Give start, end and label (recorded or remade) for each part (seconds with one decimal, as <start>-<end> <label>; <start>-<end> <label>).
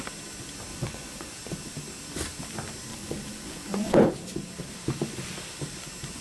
0.0-0.7 recorded; 0.7-1.3 remade; 1.3-2.9 recorded; 2.9-4.1 remade; 4.1-6.2 recorded